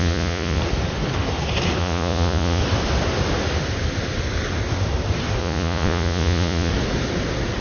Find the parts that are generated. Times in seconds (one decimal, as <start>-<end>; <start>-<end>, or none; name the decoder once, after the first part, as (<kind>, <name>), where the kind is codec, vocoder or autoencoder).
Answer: 0.0-0.6 (vocoder, Vocos); 1.8-2.6; 5.4-6.7